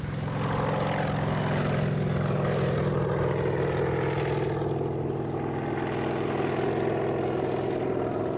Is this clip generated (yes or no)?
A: no